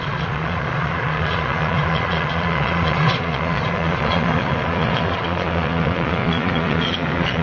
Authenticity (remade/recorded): remade